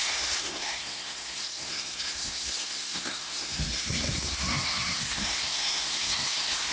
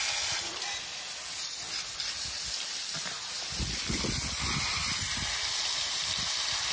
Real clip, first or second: second